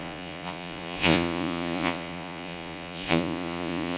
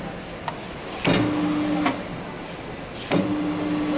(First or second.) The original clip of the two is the second